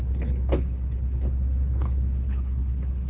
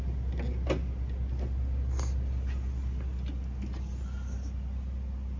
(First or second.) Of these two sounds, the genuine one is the second